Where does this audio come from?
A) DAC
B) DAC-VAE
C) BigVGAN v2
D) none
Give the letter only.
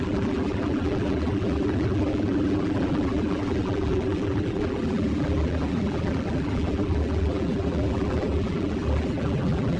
C